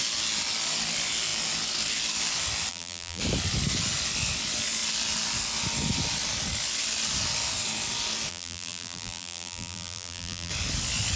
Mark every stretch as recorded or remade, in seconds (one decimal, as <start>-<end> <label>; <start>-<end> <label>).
0.0-2.7 recorded; 2.7-3.2 remade; 3.2-8.3 recorded; 8.3-10.5 remade; 10.5-11.2 recorded